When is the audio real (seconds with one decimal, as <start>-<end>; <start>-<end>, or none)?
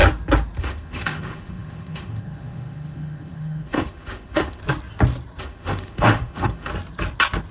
0.0-0.6; 4.6-5.4; 6.7-7.5